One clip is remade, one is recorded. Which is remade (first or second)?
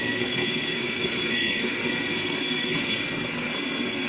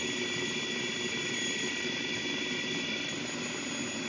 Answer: first